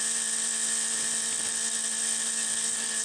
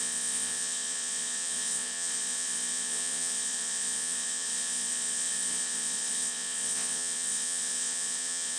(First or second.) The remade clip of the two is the second